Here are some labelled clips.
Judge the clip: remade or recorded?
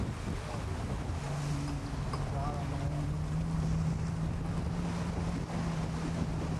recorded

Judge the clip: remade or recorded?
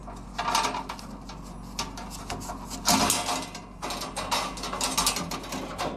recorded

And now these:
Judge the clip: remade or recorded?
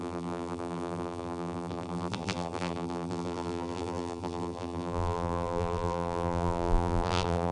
remade